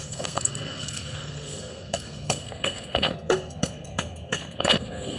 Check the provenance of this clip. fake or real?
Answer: fake